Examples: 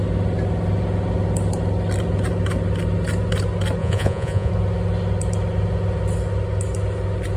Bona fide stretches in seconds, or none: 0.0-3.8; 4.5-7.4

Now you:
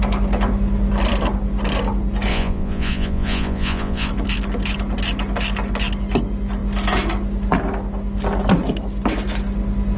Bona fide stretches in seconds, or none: 0.0-2.3; 4.1-10.0

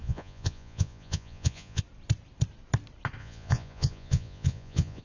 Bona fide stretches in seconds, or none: 1.8-3.2

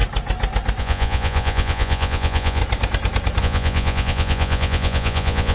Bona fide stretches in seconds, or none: 0.0-0.8; 2.6-3.4

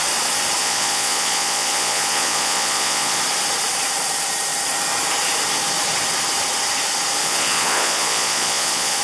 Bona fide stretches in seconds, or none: 0.0-0.6; 3.2-7.2